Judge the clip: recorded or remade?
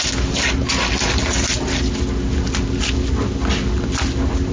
recorded